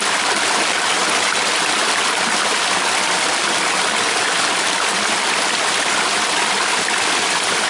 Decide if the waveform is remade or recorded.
recorded